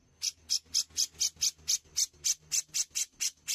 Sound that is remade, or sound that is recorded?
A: recorded